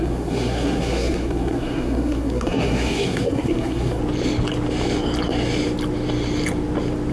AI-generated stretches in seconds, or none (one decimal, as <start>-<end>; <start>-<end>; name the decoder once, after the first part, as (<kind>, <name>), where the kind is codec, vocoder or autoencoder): 0.0-4.0 (codec, SNAC)